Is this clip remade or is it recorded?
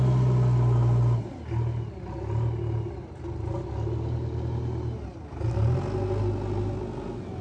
recorded